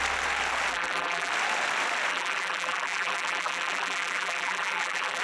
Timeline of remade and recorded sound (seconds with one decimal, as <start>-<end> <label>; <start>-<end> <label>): 0.0-0.7 recorded; 0.7-1.3 remade; 1.3-2.1 recorded; 2.1-5.2 remade